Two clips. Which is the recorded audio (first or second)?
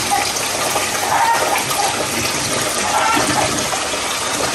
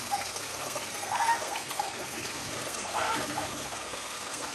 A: first